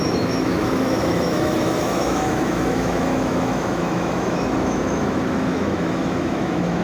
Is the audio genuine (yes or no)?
no